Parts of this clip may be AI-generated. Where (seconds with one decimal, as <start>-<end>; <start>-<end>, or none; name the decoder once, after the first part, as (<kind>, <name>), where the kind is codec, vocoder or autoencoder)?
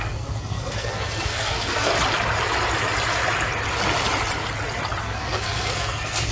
0.0-1.9 (codec, SNAC); 5.0-6.3